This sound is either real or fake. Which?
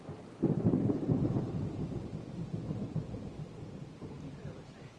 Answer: fake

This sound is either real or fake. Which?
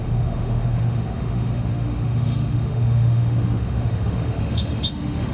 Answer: fake